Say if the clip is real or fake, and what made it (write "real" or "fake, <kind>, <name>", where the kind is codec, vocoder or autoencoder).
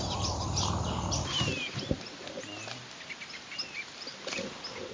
real